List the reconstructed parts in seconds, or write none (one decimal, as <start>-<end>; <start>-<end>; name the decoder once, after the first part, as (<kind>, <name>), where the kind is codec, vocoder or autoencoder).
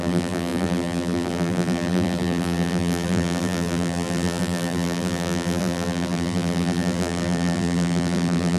0.0-8.6 (vocoder, BigVGAN v2)